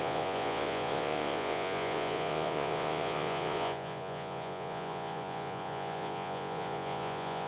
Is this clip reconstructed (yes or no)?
yes